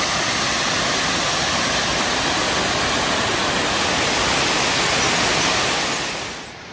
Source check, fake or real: real